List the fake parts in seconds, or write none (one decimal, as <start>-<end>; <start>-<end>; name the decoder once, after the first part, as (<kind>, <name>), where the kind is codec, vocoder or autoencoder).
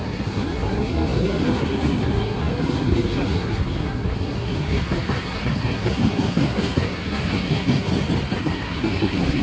0.0-7.9 (codec, SNAC); 8.4-9.4